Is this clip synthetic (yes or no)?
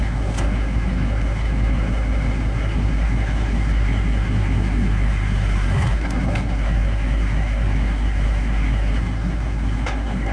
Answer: yes